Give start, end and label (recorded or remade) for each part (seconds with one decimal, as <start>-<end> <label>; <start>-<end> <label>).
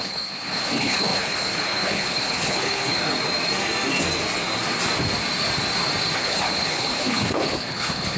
0.0-3.0 remade; 3.0-6.2 recorded; 6.2-8.2 remade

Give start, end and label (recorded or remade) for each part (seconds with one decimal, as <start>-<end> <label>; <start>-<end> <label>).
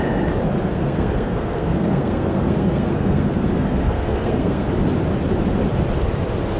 0.0-0.7 recorded; 0.7-4.7 remade; 4.7-6.6 recorded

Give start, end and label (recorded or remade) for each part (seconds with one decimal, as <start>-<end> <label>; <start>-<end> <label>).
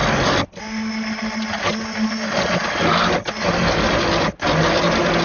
0.0-5.2 recorded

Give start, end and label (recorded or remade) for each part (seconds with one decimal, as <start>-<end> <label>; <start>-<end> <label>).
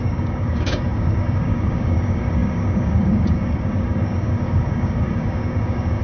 0.0-6.0 remade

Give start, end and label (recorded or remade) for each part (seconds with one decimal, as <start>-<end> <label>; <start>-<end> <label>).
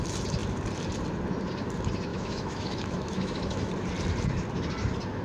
0.0-2.1 recorded; 2.1-3.7 remade; 3.7-5.2 recorded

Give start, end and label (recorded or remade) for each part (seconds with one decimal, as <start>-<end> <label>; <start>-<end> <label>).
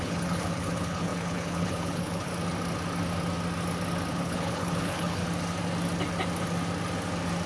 0.0-2.3 remade; 2.3-4.1 recorded; 4.1-5.2 remade; 5.2-7.5 recorded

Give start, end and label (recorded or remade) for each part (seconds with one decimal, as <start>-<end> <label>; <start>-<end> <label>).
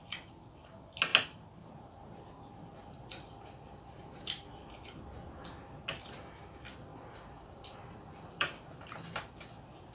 0.0-2.8 recorded; 2.8-4.5 remade; 4.5-6.9 recorded; 6.9-8.6 remade; 8.6-9.9 recorded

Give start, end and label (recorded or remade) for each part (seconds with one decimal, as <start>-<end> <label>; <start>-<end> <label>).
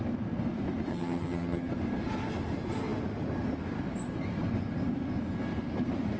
0.0-0.9 recorded; 0.9-1.7 remade; 1.7-6.2 recorded